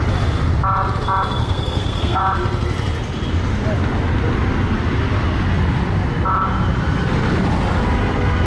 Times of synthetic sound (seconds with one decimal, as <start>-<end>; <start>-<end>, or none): 1.4-2.2